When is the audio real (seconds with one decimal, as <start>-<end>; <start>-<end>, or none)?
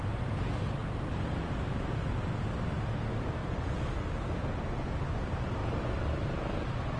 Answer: 0.0-3.4; 3.9-7.0